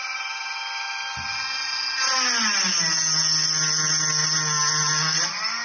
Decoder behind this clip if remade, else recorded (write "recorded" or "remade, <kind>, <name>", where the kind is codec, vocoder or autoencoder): recorded